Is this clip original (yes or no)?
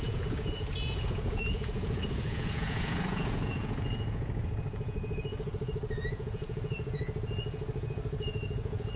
no